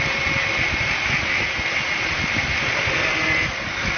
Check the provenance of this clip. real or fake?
real